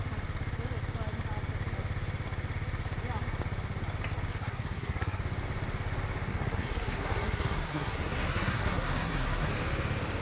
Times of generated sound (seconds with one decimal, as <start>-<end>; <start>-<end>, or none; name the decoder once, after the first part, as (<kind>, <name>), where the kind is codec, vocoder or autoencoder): 4.4-5.2 (codec, SNAC); 6.3-9.5